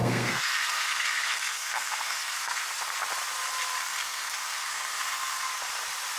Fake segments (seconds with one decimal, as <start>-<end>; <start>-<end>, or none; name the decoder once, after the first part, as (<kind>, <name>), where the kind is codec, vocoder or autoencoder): 0.0-2.6 (codec, SNAC); 3.8-5.5